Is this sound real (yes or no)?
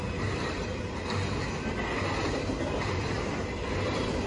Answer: yes